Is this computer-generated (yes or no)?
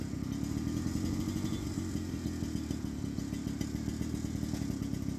no